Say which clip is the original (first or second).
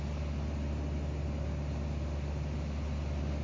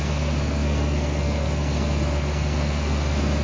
first